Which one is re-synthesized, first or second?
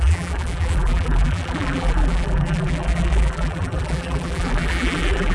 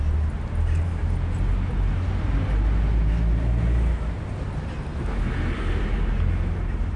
first